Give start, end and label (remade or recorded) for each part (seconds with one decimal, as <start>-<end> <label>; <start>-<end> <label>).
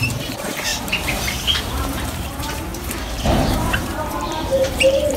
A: 0.0-2.7 remade; 2.7-3.3 recorded; 3.3-5.2 remade